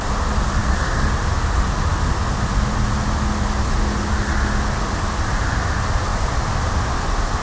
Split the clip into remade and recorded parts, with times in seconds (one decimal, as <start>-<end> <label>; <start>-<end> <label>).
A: 0.0-0.6 recorded; 0.6-1.1 remade; 1.1-7.4 recorded